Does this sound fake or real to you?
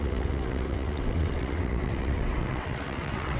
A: fake